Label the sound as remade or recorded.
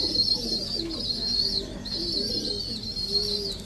recorded